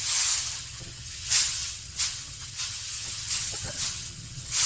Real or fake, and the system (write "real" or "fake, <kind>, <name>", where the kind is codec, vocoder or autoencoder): fake, vocoder, HiFi-GAN